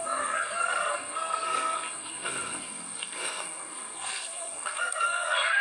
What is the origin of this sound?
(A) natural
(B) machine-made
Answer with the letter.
B